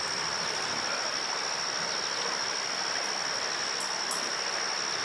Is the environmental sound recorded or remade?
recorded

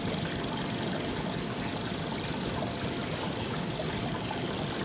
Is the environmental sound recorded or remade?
recorded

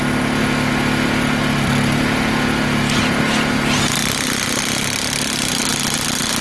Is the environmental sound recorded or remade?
recorded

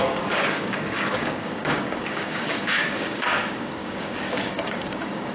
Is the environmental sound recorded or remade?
remade